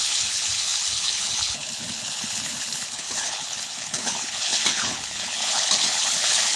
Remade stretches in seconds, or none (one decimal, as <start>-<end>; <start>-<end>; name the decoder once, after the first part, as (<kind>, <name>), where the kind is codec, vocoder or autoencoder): 0.0-6.6 (codec, HILCodec)